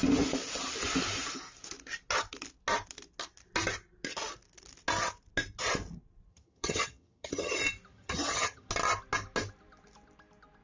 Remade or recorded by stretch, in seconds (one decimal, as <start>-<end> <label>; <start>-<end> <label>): 0.0-6.3 recorded; 6.3-7.5 remade; 7.5-7.9 recorded; 7.9-8.7 remade; 8.7-10.6 recorded